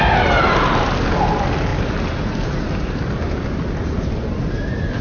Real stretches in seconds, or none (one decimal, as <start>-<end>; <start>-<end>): 0.0-5.0